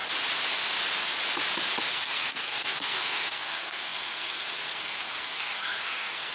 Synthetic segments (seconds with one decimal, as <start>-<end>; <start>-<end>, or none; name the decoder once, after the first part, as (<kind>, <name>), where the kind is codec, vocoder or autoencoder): 1.9-6.3 (codec, SNAC)